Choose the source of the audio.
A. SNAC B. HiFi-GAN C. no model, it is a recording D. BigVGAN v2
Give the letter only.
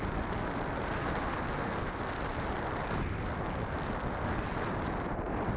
C